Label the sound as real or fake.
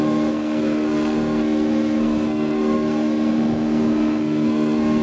fake